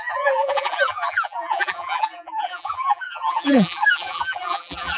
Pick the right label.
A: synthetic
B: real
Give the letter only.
A